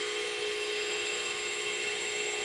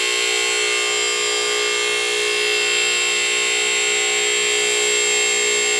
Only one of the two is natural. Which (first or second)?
second